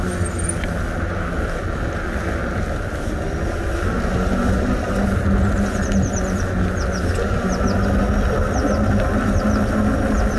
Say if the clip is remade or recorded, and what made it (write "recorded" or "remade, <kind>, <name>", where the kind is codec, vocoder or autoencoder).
recorded